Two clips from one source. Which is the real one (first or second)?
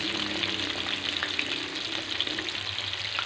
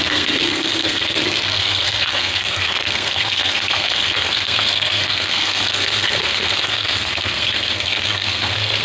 first